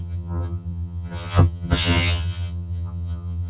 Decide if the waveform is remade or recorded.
remade